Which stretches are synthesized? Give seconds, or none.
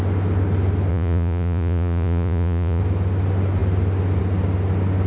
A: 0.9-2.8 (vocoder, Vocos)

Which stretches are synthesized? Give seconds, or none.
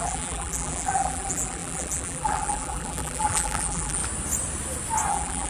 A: 0.0-4.0 (vocoder, BigVGAN v2); 5.1-5.5